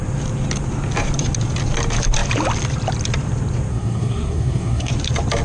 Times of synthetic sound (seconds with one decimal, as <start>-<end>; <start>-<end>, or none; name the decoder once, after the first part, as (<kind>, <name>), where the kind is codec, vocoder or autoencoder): 3.7-4.9 (codec, SNAC)